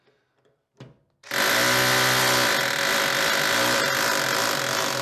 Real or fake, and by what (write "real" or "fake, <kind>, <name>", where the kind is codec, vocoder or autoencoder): real